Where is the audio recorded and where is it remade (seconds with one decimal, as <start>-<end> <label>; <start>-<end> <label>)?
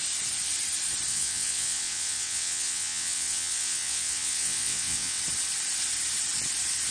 0.0-1.1 recorded; 1.1-5.2 remade; 5.2-6.9 recorded